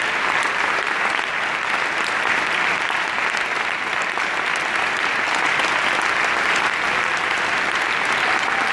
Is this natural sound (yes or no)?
yes